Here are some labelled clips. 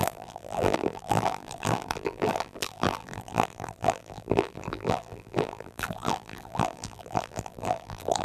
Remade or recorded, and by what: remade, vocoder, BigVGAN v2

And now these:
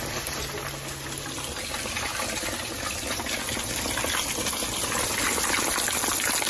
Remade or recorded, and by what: recorded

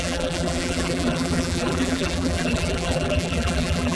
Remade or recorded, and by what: remade, vocoder, BigVGAN v2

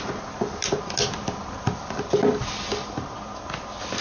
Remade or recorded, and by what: recorded